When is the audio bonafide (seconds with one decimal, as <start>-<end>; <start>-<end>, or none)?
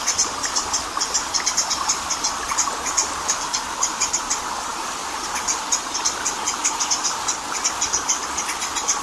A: none